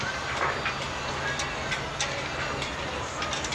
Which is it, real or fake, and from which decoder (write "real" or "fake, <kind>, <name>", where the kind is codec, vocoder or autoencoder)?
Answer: real